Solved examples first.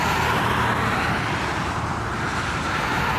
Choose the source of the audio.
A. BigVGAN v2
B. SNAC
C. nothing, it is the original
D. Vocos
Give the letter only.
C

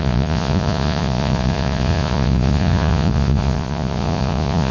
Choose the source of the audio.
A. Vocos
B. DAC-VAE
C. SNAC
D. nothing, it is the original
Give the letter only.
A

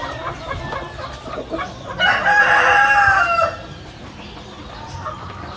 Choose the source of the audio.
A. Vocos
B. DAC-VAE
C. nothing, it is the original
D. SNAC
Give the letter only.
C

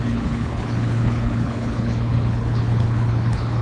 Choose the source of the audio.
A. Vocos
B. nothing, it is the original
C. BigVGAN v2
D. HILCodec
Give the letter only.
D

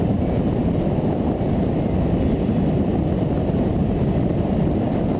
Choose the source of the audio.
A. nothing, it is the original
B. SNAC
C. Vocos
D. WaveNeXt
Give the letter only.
A